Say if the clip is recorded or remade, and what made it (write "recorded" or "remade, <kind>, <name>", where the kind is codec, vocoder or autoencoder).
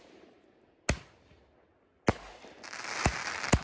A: recorded